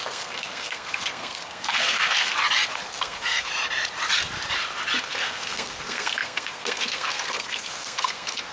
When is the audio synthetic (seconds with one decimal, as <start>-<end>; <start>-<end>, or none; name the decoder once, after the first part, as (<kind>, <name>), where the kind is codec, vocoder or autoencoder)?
0.0-2.3 (codec, SNAC); 2.9-3.5; 5.0-8.5

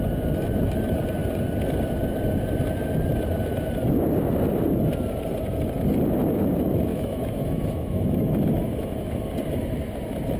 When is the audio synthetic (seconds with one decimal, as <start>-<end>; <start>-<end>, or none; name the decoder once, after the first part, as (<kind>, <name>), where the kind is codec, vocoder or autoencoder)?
6.9-9.2 (autoencoder, DAC-VAE)

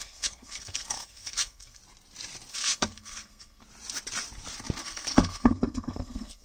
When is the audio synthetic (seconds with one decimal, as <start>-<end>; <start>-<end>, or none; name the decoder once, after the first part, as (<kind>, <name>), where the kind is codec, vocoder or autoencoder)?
0.0-1.8 (codec, SNAC); 2.5-3.6; 4.8-6.4

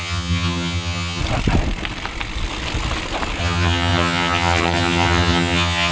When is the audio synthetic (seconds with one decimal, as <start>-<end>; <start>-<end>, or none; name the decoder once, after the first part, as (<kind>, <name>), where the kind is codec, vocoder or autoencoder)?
0.0-1.2 (vocoder, HiFi-GAN); 3.4-5.9

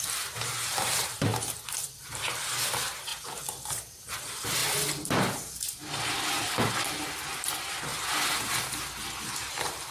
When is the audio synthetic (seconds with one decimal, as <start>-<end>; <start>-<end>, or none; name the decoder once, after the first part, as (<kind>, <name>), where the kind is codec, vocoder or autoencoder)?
0.0-1.3 (vocoder, BigVGAN v2); 2.0-3.1; 3.7-4.6; 7.5-7.9; 9.5-9.9

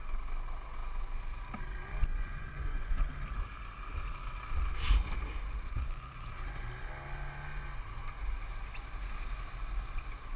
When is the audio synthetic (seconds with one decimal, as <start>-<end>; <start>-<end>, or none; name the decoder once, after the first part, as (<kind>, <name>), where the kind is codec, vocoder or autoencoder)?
2.1-3.1 (vocoder, Vocos); 5.7-6.3

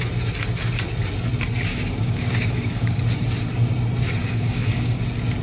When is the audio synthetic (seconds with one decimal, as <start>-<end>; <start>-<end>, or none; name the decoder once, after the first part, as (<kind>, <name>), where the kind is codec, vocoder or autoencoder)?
1.7-3.0 (codec, DAC); 4.2-5.0